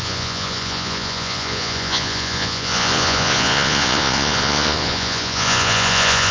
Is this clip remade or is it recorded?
remade